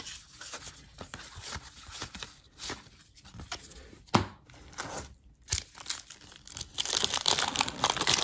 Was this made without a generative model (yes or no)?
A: yes